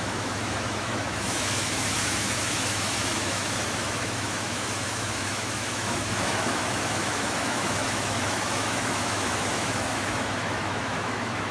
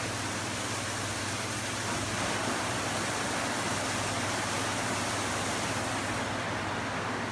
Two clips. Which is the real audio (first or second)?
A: second